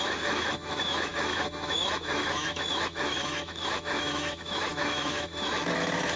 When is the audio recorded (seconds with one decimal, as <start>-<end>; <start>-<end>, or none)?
none